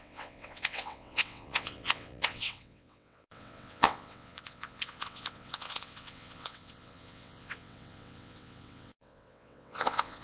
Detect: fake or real fake